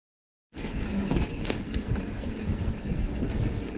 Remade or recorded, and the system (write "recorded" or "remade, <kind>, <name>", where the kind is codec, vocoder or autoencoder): remade, codec, SNAC